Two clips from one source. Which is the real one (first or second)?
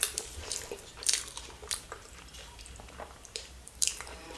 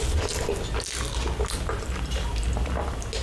second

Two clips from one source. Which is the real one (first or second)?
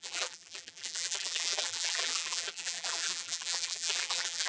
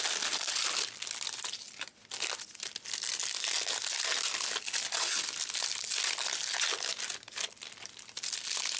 second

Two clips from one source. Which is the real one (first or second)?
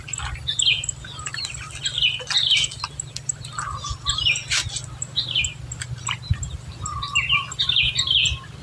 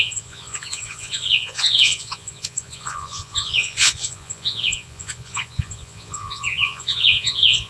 first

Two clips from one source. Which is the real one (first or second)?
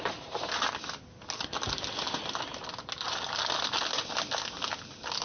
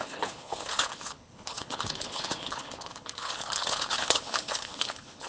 first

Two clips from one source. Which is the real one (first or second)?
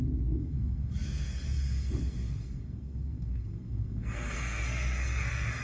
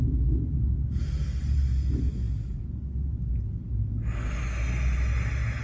second